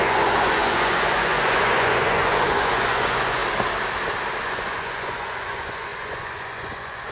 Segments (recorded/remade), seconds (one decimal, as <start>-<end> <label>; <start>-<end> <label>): 0.0-3.4 remade; 3.4-4.4 recorded; 4.4-7.1 remade